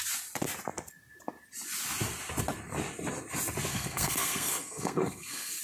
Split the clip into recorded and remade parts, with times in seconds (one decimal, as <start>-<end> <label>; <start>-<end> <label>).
0.0-3.7 recorded; 3.7-5.6 remade